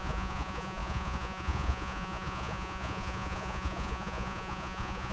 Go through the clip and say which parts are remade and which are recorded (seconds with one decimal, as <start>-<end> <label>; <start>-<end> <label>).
0.0-5.1 remade